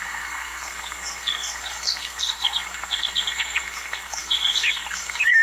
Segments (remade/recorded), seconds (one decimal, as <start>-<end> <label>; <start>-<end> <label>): 0.0-5.4 remade